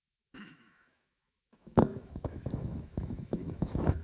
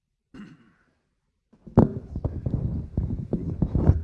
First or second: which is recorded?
second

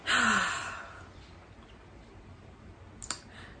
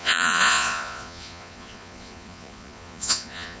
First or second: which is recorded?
first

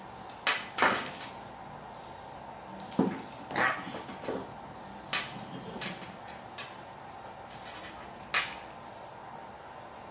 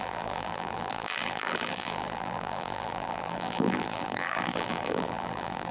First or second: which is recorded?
first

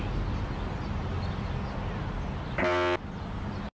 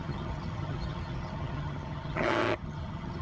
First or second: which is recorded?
first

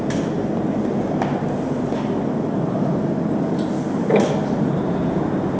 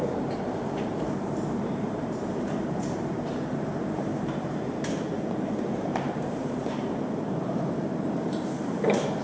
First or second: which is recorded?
first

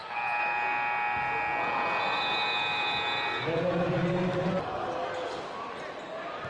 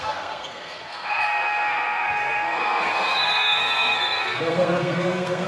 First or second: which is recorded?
first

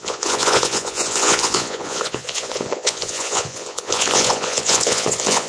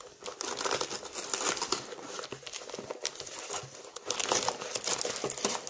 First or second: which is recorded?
second